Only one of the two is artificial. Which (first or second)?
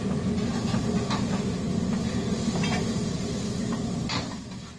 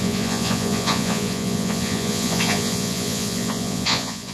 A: second